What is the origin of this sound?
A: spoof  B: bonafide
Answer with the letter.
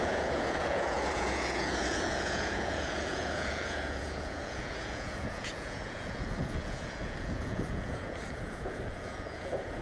A